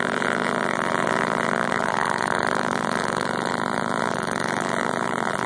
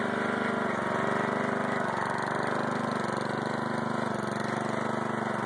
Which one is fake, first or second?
first